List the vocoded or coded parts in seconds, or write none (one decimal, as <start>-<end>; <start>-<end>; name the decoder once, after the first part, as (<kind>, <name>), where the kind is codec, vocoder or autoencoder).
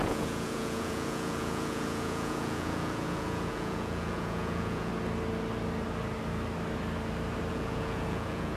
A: 0.0-4.9 (vocoder, Vocos); 7.5-8.6